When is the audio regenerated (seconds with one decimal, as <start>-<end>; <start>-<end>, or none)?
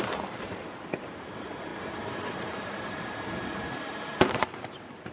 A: 1.7-5.1